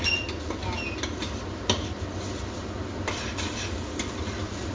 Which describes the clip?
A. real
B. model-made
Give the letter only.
A